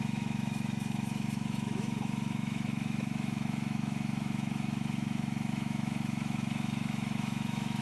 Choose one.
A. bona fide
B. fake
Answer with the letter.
B